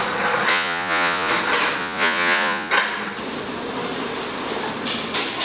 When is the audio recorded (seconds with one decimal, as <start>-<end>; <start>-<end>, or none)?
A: 0.0-0.5; 1.3-1.8; 2.7-5.4